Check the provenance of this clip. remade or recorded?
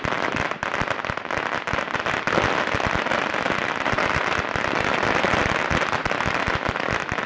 recorded